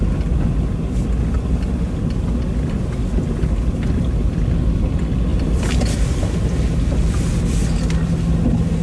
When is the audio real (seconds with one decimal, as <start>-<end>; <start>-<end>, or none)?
0.0-8.8